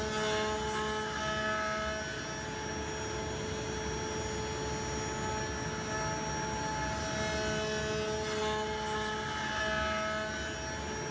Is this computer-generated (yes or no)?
no